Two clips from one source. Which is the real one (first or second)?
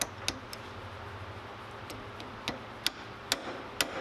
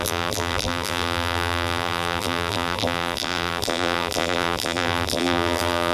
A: first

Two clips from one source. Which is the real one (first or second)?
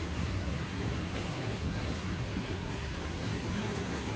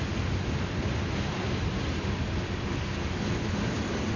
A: second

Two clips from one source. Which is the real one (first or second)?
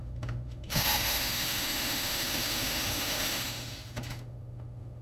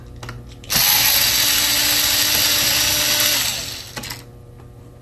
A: second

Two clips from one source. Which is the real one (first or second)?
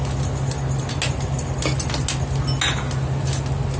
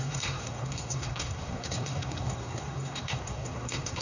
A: first